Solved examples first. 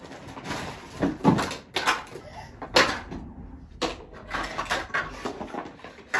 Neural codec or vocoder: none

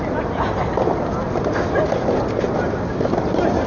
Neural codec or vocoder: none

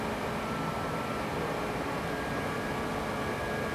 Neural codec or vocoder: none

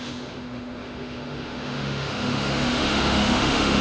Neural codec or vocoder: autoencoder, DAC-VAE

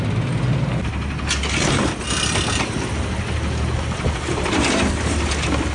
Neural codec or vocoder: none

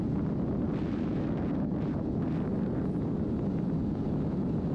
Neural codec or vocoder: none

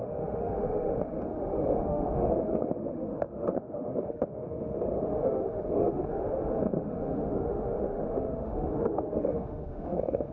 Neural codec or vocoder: autoencoder, DAC-VAE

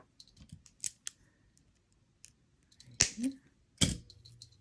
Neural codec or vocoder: none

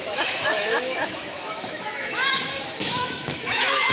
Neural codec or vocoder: autoencoder, DAC-VAE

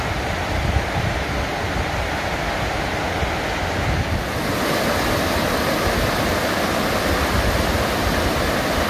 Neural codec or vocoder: none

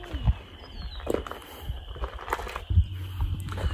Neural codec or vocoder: none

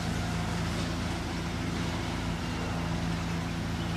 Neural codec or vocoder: none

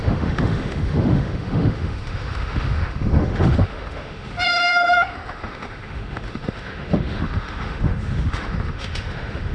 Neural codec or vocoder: autoencoder, DAC-VAE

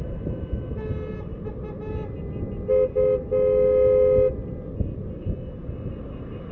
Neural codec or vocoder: none